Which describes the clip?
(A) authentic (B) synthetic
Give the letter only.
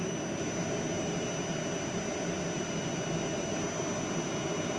A